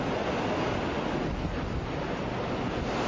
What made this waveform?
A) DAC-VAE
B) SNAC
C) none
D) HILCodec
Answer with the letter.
C